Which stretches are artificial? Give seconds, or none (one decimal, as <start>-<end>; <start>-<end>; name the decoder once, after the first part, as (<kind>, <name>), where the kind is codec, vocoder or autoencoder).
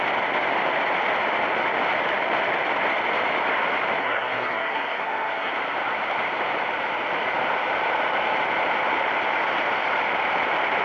4.0-5.5 (codec, SNAC)